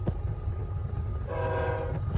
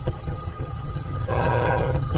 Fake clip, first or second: second